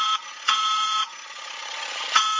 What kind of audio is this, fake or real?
fake